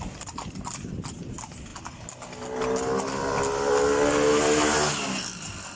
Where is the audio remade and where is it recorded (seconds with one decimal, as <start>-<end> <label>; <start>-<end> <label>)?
0.0-5.8 recorded